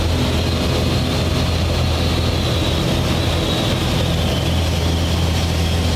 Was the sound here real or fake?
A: real